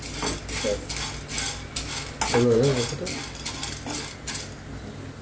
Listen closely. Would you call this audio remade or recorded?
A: recorded